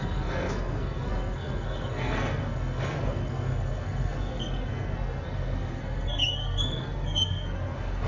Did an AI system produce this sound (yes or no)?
yes